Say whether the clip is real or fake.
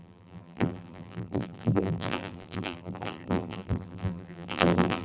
fake